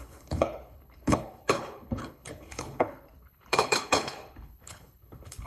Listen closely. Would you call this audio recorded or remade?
remade